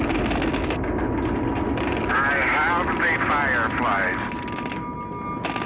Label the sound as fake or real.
real